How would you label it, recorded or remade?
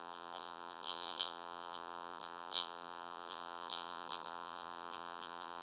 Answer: remade